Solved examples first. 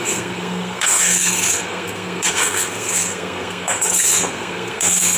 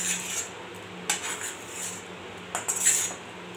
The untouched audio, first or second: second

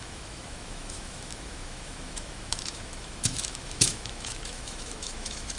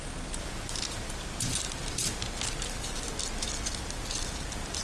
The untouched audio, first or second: second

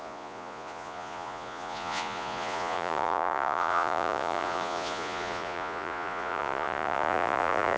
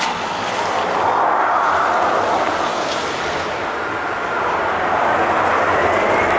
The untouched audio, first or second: second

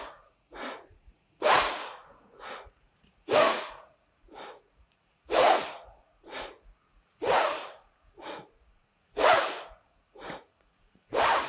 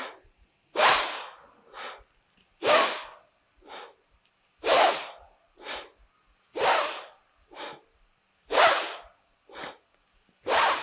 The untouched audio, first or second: second